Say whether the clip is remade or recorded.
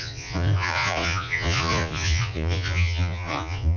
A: remade